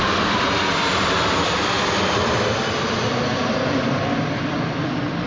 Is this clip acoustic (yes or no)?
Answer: no